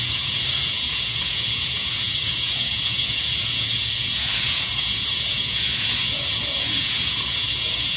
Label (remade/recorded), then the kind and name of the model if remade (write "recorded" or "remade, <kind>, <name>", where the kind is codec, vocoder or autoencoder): remade, vocoder, Vocos